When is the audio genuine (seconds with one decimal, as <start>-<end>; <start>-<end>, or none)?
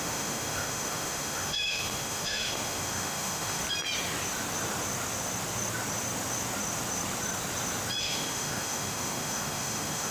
3.6-8.0